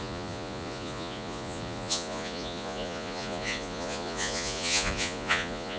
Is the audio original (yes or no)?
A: no